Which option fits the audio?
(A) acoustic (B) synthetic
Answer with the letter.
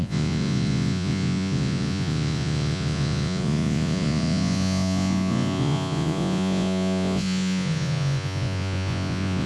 B